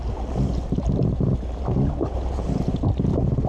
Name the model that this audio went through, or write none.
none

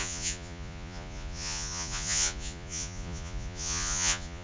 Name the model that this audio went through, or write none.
vocoder, Vocos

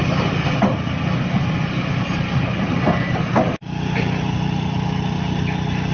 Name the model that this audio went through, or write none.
none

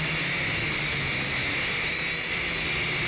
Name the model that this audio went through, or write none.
none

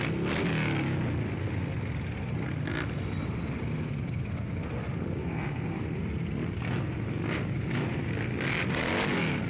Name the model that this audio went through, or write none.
none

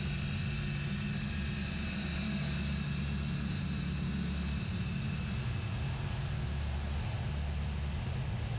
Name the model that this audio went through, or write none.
none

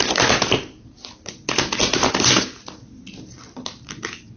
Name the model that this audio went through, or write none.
none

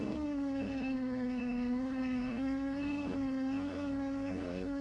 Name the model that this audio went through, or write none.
codec, SNAC